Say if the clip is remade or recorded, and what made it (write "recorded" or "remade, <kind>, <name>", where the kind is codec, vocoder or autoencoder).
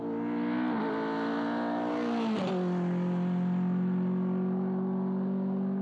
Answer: recorded